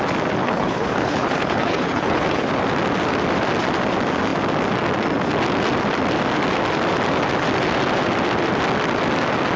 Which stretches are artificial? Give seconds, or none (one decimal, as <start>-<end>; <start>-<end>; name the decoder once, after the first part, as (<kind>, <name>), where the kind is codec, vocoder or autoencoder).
0.4-2.5 (codec, HILCodec)